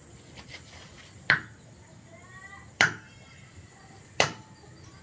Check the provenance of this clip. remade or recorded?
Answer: remade